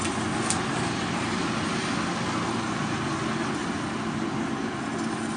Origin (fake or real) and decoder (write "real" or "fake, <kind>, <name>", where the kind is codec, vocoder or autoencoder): real